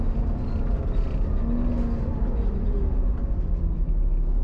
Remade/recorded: recorded